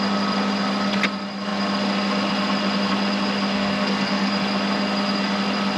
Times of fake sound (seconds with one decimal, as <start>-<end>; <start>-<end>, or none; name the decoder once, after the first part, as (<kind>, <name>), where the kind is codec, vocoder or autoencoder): 3.5-4.3 (codec, SNAC)